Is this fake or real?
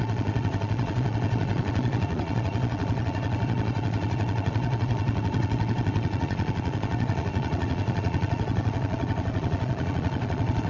fake